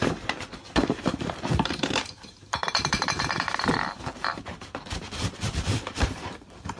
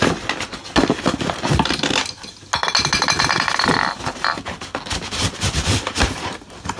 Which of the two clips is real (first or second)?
second